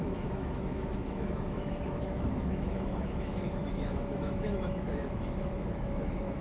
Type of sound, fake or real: fake